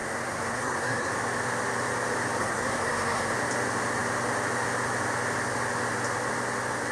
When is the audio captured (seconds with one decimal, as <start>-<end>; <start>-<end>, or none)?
1.1-2.4; 3.3-6.9